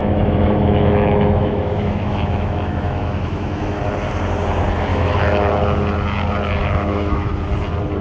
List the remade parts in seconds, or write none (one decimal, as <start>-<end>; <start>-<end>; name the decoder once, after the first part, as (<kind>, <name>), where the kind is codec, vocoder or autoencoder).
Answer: 0.0-3.8 (autoencoder, DAC-VAE); 4.9-5.5; 6.6-7.3